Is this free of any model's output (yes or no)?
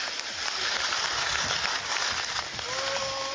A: yes